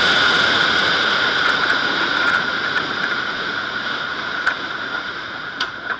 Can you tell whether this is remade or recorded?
remade